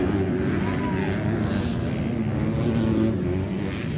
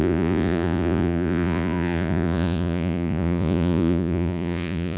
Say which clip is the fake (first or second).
second